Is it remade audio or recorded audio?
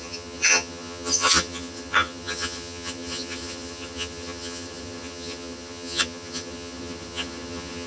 remade